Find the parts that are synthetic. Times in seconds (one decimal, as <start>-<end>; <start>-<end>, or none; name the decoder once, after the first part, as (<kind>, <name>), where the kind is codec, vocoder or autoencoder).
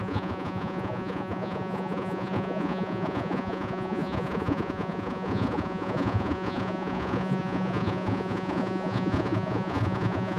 0.0-10.4 (vocoder, Vocos)